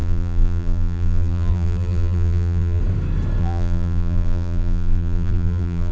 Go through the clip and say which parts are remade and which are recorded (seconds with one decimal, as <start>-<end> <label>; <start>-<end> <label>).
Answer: 0.0-2.8 remade; 2.8-3.4 recorded; 3.4-5.9 remade

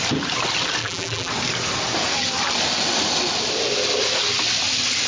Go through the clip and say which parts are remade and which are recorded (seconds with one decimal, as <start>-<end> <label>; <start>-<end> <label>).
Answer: 0.0-0.8 recorded; 0.8-1.3 remade; 1.3-5.1 recorded